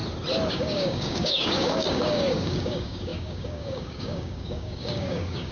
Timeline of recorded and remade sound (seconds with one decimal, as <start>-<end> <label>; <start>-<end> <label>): 0.0-0.5 recorded; 0.5-5.5 remade